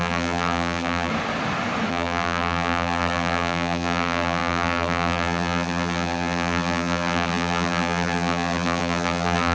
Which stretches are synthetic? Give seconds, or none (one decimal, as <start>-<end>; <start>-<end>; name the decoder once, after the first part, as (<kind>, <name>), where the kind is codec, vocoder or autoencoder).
0.0-1.1 (vocoder, BigVGAN v2); 1.9-9.5